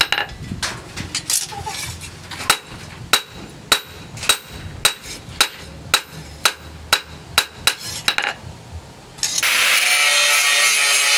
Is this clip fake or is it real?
real